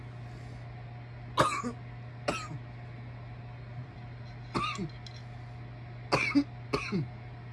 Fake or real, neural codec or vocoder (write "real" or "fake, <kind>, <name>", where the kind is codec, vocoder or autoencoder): real